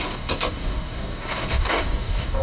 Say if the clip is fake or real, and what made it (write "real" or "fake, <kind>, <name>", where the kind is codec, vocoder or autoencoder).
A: fake, codec, DAC